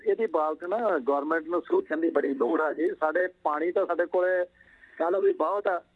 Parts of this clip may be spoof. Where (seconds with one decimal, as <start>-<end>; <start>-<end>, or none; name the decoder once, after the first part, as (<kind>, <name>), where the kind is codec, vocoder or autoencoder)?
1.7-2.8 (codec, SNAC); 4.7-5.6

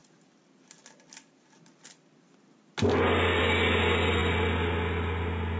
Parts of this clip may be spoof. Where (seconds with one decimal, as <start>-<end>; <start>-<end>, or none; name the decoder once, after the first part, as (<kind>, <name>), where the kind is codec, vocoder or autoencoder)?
none

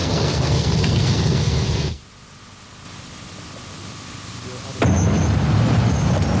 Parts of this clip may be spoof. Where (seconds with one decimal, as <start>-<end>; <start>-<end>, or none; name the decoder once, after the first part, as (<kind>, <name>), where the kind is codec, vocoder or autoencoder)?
0.0-2.0 (codec, SNAC)